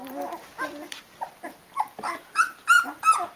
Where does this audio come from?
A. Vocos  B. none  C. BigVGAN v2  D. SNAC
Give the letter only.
C